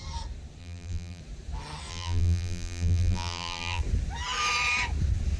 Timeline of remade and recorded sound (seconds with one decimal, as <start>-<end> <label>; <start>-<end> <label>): 0.0-0.6 recorded; 0.6-1.2 remade; 1.2-1.9 recorded; 1.9-3.8 remade; 3.8-5.4 recorded